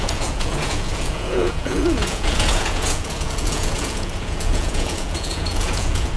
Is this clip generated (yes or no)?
yes